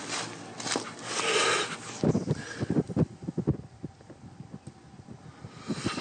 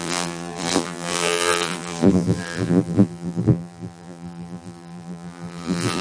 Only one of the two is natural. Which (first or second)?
first